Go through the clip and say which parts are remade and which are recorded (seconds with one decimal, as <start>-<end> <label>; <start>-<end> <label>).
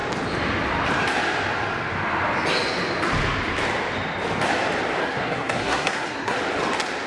0.0-5.0 recorded; 5.0-6.4 remade; 6.4-7.1 recorded